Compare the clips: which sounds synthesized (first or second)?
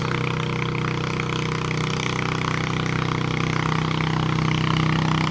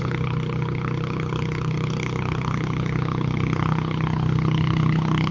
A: second